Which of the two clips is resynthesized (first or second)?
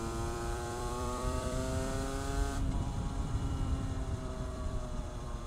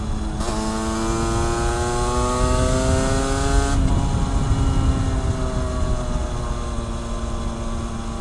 first